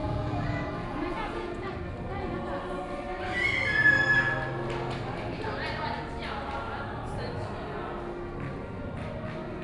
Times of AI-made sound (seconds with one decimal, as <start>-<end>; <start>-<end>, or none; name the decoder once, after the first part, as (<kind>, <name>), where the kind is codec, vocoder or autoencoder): 0.0-1.7 (vocoder, Vocos)